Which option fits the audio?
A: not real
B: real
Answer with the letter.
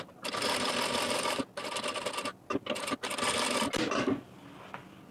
B